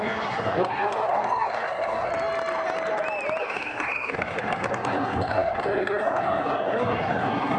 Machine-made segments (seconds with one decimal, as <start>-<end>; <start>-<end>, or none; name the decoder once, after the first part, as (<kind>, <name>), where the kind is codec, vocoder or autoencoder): 0.0-2.1 (codec, SNAC); 3.4-7.6